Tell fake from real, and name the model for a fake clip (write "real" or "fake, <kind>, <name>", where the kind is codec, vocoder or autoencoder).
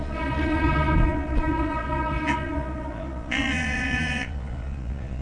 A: fake, vocoder, Vocos